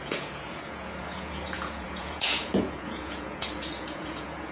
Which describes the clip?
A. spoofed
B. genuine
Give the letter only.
A